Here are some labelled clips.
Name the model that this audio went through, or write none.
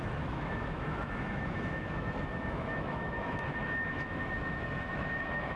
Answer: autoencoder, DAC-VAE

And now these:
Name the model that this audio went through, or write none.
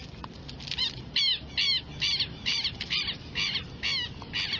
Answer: none